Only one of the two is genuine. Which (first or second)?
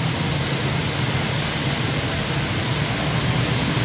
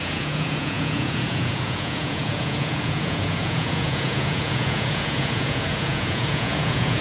first